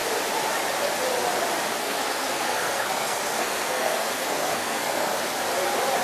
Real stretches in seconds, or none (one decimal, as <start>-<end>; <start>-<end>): 0.0-1.8; 5.2-6.0